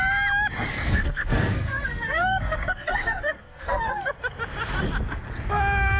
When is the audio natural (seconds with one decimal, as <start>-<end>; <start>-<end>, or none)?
0.0-0.7; 4.1-6.0